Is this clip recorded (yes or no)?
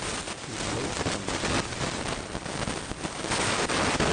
yes